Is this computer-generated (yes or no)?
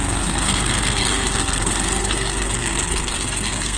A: yes